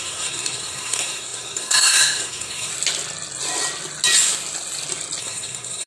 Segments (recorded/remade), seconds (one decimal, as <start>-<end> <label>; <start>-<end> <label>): 0.0-2.7 remade; 2.7-5.2 recorded; 5.2-5.9 remade